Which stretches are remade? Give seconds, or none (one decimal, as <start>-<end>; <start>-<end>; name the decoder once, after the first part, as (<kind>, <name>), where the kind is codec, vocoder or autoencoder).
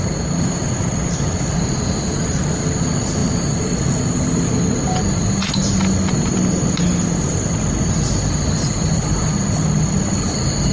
none